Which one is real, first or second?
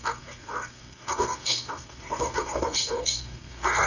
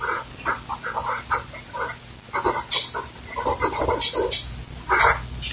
second